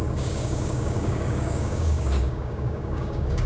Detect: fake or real fake